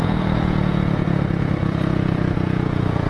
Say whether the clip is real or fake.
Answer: fake